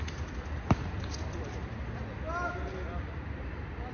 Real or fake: real